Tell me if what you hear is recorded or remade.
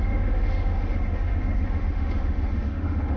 remade